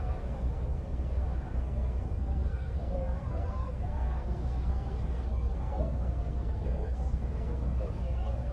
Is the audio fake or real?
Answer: fake